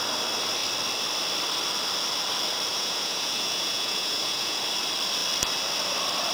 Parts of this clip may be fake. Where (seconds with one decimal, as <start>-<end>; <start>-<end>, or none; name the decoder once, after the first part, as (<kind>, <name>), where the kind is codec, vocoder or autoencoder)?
2.7-4.6 (vocoder, Vocos)